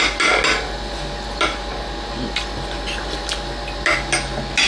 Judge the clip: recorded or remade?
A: recorded